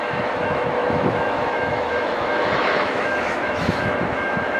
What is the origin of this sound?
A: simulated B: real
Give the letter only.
A